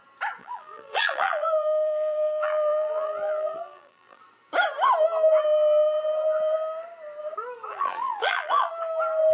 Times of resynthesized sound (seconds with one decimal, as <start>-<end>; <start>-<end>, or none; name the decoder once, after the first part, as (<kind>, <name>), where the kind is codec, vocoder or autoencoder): 0.4-4.2 (vocoder, BigVGAN v2); 7.7-8.7